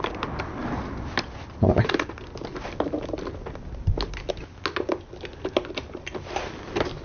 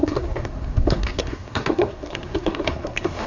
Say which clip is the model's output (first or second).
second